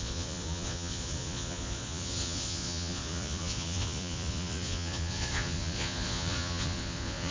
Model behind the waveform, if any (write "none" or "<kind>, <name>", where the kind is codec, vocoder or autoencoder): vocoder, Vocos